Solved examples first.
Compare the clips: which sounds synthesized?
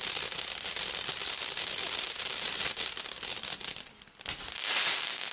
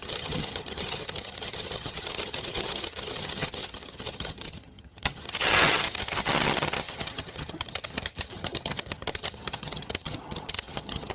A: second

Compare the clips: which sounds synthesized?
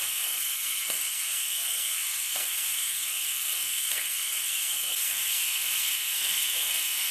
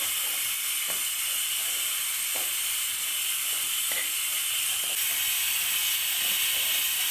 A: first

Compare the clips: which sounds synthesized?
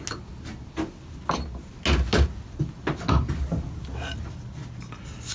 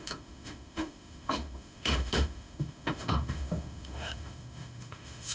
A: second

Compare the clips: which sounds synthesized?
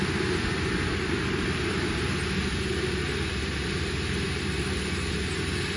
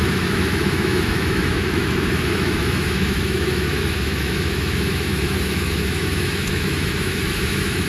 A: second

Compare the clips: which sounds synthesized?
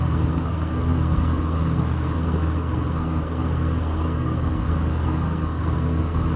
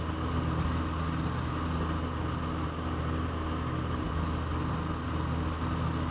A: first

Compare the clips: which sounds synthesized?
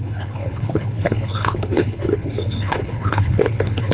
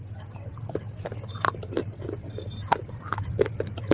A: first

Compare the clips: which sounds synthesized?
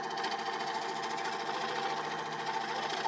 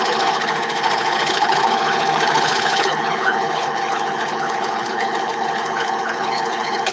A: second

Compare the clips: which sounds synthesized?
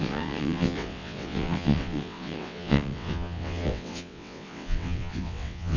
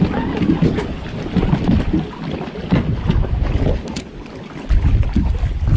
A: first